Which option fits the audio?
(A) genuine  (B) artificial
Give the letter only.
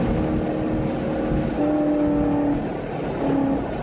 A